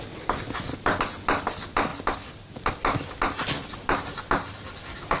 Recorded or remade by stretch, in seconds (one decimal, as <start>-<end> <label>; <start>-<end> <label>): 0.0-5.2 recorded

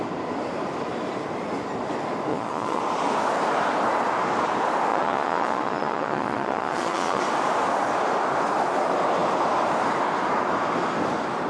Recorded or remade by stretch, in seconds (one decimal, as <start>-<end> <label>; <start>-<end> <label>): 0.0-2.3 recorded; 2.3-2.8 remade; 2.8-4.9 recorded; 4.9-7.2 remade; 7.2-11.5 recorded

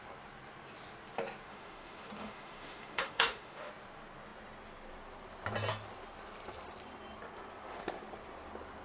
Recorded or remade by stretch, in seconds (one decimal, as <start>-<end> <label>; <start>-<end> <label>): 0.0-1.5 recorded; 1.5-3.7 remade; 3.7-8.8 recorded

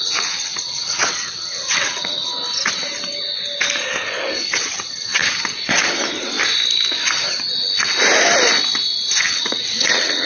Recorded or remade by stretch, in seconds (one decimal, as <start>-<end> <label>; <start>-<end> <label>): 0.0-2.3 remade; 2.3-4.5 recorded; 4.5-5.2 remade; 5.2-9.2 recorded; 9.2-10.3 remade